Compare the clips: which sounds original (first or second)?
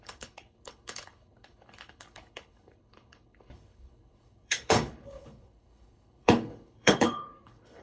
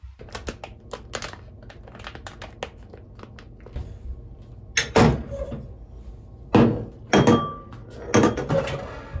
second